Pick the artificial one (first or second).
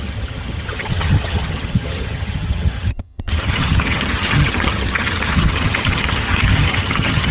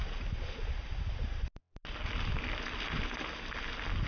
first